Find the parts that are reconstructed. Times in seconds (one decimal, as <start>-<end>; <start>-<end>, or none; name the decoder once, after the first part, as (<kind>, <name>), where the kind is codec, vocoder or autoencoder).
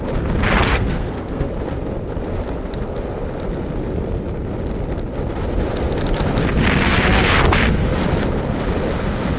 0.7-1.5 (codec, SNAC)